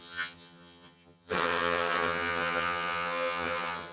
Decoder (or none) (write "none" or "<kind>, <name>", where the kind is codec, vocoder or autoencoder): vocoder, HiFi-GAN